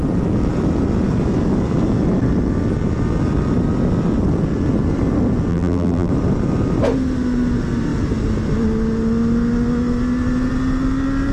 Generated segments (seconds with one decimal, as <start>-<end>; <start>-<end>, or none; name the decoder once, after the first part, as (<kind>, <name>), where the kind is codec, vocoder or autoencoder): 5.5-6.1 (vocoder, BigVGAN v2)